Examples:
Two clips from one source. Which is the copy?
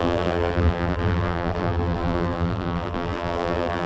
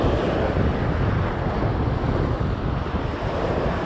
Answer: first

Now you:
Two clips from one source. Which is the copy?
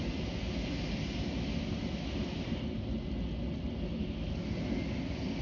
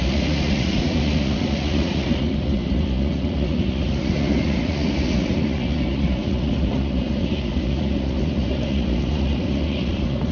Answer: second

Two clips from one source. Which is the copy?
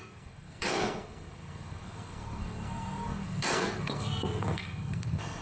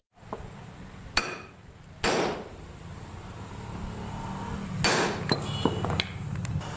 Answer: first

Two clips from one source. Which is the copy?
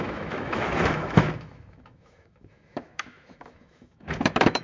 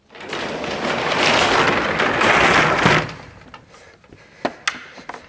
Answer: first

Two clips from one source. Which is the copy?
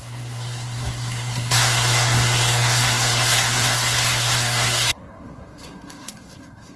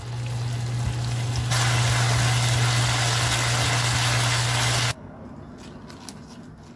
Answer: first